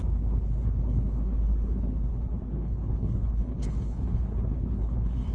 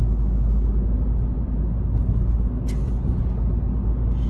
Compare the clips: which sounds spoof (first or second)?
first